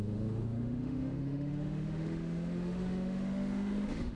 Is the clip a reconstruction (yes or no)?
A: yes